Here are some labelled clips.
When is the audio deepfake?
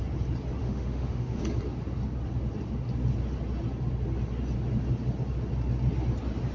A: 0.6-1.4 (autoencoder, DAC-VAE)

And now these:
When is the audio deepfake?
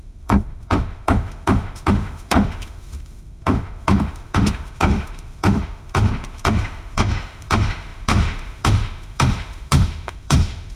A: 0.0-10.8 (autoencoder, DAC-VAE)